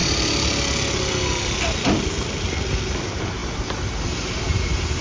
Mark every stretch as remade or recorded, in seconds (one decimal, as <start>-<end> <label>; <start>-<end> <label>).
0.0-5.0 recorded